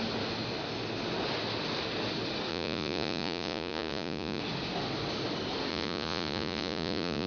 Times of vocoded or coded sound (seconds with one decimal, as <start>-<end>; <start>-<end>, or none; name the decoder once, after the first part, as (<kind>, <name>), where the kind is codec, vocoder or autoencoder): 2.5-4.4 (vocoder, Vocos); 5.7-7.3